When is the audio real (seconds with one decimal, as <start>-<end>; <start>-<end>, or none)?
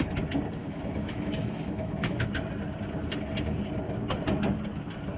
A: 0.0-0.6; 2.2-5.2